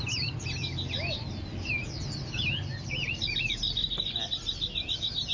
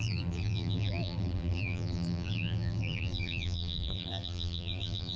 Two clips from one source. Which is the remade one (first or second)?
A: second